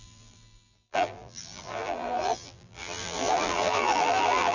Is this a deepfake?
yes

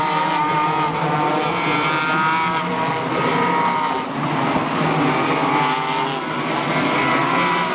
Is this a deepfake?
no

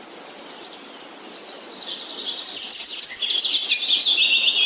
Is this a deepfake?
no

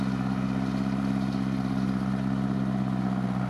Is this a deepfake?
no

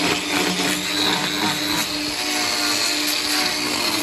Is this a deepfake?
no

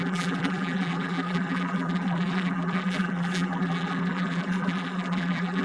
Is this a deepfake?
yes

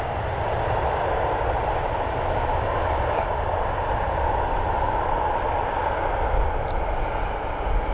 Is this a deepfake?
no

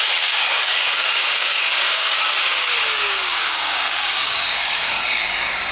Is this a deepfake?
yes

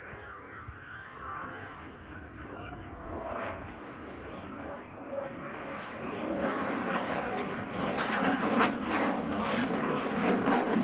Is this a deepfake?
yes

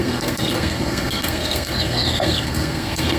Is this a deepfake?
yes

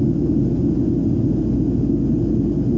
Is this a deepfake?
no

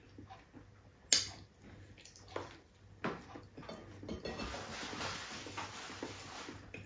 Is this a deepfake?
no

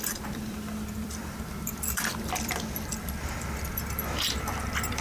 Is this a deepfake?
yes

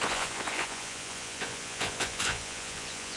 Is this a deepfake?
yes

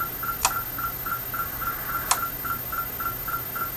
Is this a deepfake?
no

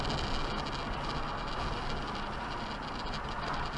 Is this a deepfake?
no